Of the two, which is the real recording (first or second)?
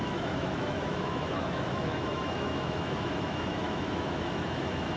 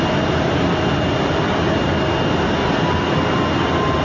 second